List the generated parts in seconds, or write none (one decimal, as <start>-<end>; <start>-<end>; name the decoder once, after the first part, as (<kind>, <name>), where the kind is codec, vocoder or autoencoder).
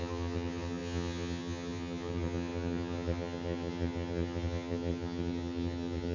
0.0-6.1 (vocoder, HiFi-GAN)